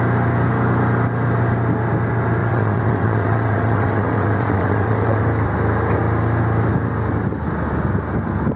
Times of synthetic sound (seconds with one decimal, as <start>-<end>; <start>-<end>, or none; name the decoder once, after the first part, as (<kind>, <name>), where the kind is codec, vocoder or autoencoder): 2.4-5.2 (vocoder, WaveNeXt)